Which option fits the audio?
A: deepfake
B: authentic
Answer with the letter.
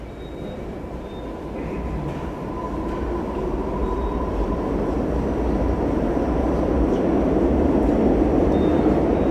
B